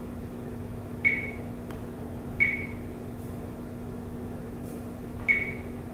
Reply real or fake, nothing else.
fake